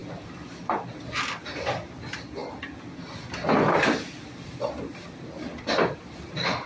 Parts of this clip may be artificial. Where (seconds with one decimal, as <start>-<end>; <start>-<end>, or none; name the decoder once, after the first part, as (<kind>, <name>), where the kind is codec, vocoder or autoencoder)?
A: none